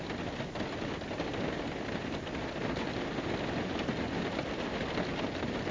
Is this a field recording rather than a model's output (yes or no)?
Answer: yes